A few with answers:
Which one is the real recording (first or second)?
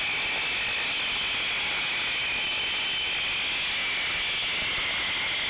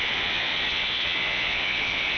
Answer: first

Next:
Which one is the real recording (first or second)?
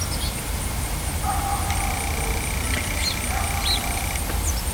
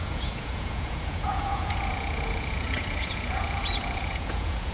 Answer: first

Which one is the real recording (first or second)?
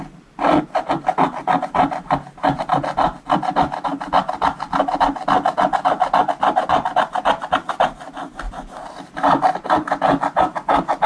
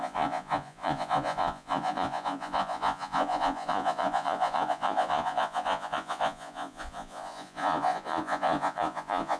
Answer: first